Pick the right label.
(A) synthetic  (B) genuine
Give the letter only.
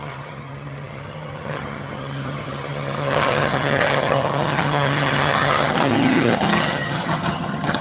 A